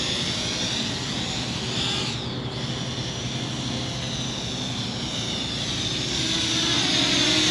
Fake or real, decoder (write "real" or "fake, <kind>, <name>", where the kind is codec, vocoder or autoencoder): real